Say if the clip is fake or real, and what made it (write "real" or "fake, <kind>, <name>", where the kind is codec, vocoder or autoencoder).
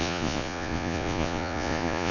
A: fake, vocoder, Vocos